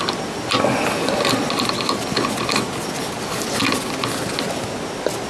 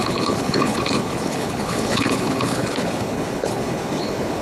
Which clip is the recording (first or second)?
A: first